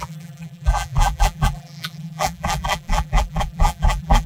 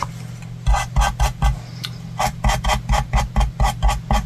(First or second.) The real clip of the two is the second